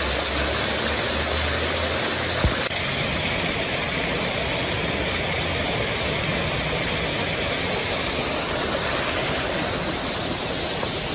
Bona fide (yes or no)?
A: yes